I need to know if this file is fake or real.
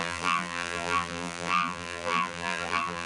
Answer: fake